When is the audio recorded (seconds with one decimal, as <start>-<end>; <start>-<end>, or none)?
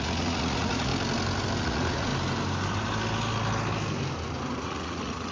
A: 0.9-1.6; 2.1-4.6